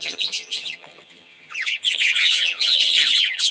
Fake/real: fake